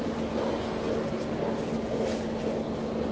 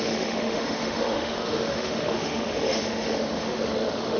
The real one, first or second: first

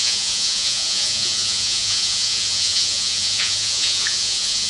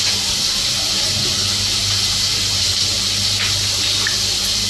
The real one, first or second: second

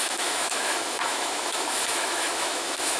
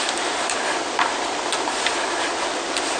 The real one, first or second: second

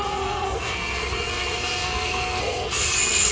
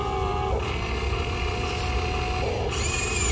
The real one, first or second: second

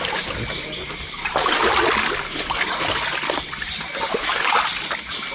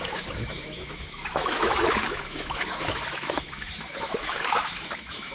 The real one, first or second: first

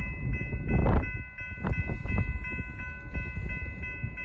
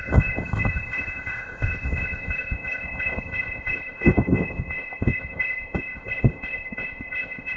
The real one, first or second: first